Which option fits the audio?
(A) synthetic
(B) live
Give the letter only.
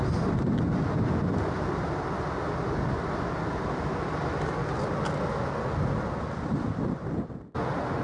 B